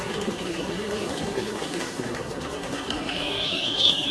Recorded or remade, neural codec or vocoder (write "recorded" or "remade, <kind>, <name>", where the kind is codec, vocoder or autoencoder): remade, codec, SNAC